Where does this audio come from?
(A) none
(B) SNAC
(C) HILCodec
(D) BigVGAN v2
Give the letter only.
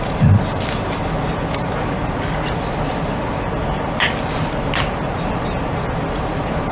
A